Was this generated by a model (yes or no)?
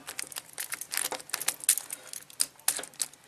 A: no